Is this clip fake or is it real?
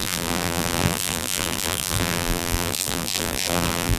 fake